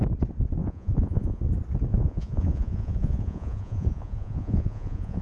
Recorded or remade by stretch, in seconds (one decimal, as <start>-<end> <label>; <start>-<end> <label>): 0.0-0.6 recorded; 0.6-1.4 remade; 1.4-1.9 recorded; 1.9-5.2 remade